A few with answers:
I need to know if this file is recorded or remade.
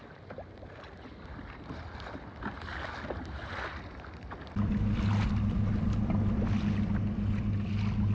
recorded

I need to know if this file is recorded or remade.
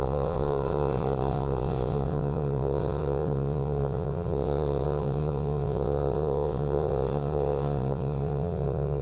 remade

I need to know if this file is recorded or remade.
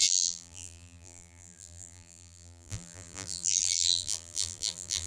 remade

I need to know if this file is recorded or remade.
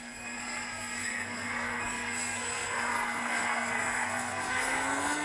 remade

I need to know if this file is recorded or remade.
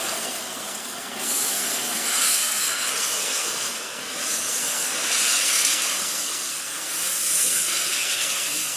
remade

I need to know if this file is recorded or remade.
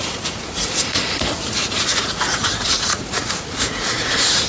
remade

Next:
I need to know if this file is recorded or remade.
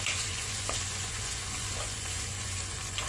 remade